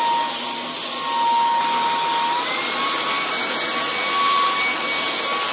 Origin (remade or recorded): recorded